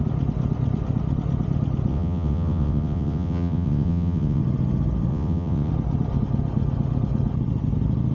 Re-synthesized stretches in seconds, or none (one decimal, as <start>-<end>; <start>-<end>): 1.9-4.4; 5.1-5.7

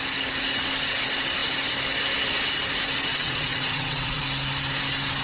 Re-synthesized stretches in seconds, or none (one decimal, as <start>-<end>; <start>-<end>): 3.1-4.2

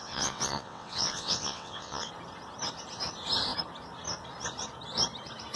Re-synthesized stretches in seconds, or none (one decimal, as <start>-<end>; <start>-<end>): 0.0-2.1